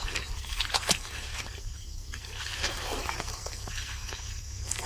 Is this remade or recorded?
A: remade